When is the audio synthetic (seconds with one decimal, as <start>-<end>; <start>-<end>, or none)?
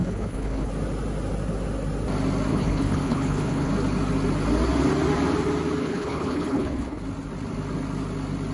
0.0-0.7; 2.5-3.7; 5.8-7.0